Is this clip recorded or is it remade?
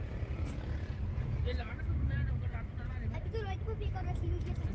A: recorded